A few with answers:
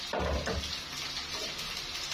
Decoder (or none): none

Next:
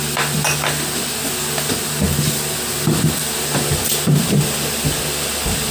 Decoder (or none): none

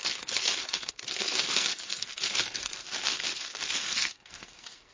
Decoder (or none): codec, SNAC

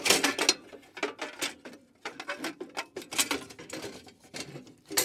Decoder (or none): none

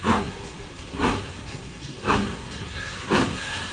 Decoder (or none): codec, SNAC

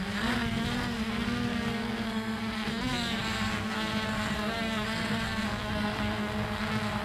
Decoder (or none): codec, SNAC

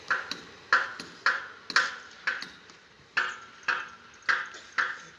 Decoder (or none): none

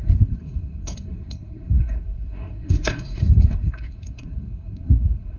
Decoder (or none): codec, SNAC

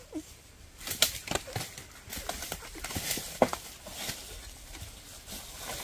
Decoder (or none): none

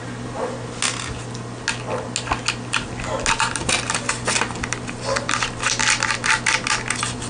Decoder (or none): none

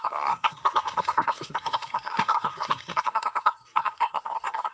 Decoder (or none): codec, SNAC